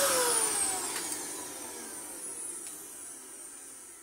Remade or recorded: recorded